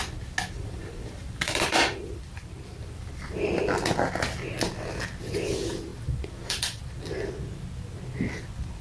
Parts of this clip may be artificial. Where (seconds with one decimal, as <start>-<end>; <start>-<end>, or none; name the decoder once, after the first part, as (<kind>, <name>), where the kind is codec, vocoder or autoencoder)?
0.6-3.6 (vocoder, BigVGAN v2); 5.9-7.3

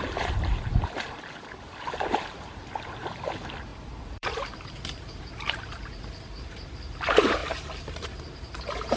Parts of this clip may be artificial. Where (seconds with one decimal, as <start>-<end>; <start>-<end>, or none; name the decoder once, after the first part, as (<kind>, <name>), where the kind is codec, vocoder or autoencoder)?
3.7-5.2 (vocoder, BigVGAN v2); 7.4-8.4

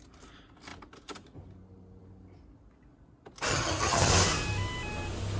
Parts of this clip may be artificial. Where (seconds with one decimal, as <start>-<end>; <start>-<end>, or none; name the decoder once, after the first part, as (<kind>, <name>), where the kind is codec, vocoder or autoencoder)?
3.5-4.1 (vocoder, HiFi-GAN)